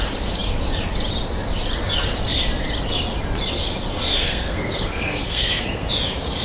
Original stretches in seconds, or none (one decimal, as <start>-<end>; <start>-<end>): 0.0-4.2; 5.9-6.4